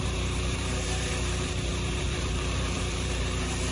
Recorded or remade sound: remade